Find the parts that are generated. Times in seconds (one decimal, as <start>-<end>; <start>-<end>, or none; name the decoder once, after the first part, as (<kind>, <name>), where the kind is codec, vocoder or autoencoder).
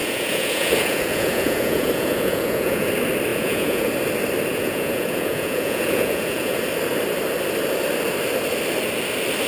0.0-2.9 (vocoder, Vocos); 3.3-3.9; 4.5-6.6